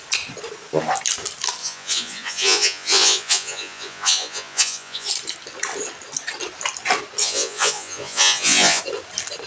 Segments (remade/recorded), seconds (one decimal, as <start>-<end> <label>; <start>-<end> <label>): 0.0-1.6 recorded; 1.6-5.1 remade; 5.1-7.2 recorded; 7.2-8.8 remade; 8.8-9.5 recorded